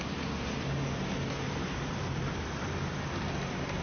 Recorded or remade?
recorded